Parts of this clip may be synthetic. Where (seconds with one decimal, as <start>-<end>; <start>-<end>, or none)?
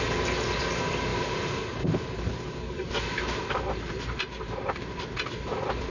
1.1-1.7; 2.3-5.0